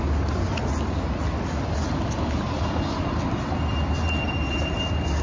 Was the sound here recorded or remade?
recorded